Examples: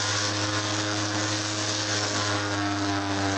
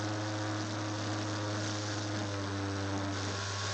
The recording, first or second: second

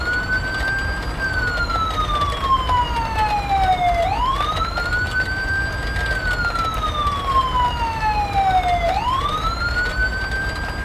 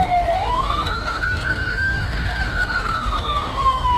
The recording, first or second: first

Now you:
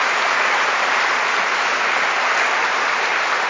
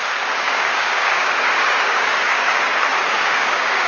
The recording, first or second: first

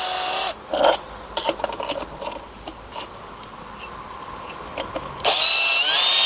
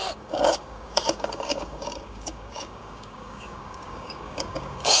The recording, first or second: first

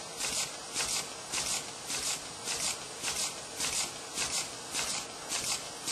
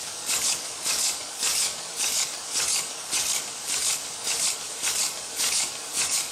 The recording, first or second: first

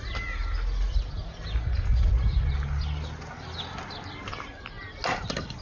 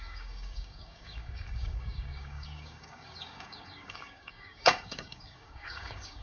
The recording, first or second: first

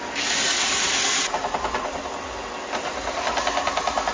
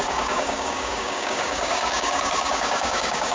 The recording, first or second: first